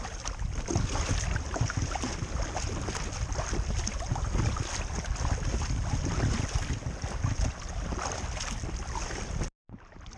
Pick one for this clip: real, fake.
real